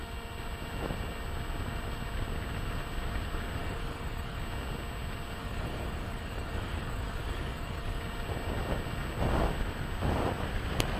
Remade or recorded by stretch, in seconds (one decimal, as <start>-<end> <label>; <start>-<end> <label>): 0.0-3.6 recorded; 3.6-4.4 remade; 4.4-5.4 recorded; 5.4-8.0 remade; 8.0-11.0 recorded